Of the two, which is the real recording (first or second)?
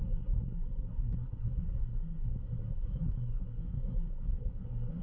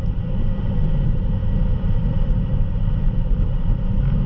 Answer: second